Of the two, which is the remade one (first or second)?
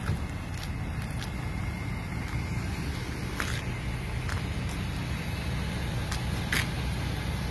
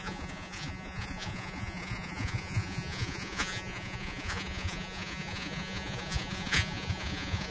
second